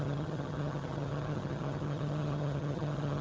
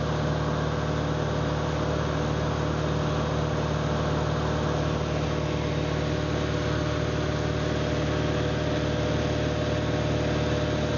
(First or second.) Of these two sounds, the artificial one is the first